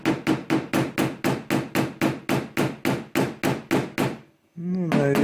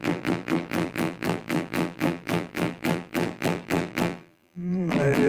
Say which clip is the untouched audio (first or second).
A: first